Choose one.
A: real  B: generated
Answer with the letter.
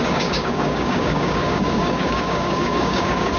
B